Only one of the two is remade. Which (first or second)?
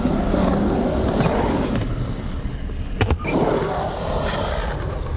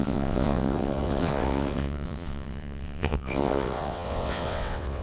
second